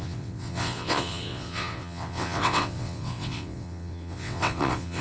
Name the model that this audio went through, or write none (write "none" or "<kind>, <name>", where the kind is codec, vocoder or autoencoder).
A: vocoder, WaveNeXt